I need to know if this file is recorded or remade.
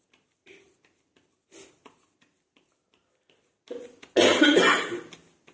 recorded